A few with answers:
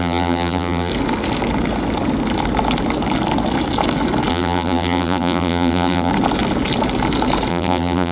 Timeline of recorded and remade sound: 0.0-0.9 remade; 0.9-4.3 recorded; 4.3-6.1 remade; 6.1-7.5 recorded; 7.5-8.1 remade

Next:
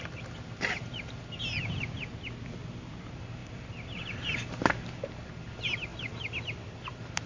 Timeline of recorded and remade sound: 0.0-7.3 recorded

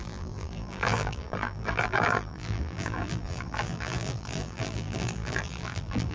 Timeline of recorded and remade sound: 0.0-6.1 remade

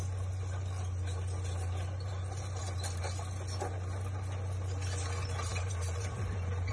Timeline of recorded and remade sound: 0.0-5.5 recorded; 5.5-6.7 remade

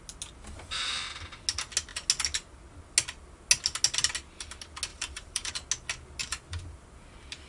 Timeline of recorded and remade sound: 0.0-4.9 recorded; 4.9-5.5 remade; 5.5-6.2 recorded; 6.2-6.8 remade; 6.8-7.5 recorded